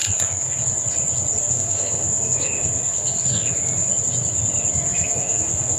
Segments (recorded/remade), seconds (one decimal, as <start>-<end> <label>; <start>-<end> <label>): 0.0-0.6 remade; 0.6-1.4 recorded; 1.4-4.0 remade; 4.0-4.9 recorded; 4.9-5.8 remade